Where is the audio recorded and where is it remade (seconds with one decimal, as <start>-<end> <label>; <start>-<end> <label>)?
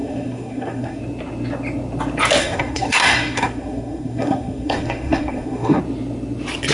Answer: 0.0-1.0 remade; 1.0-2.4 recorded; 2.4-5.8 remade; 5.8-6.7 recorded